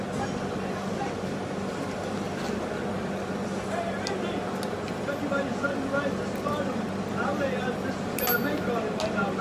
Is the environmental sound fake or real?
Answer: real